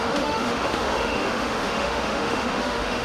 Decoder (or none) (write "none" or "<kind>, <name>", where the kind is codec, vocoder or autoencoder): autoencoder, DAC-VAE